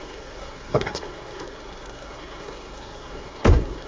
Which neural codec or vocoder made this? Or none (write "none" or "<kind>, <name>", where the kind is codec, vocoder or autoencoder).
codec, SNAC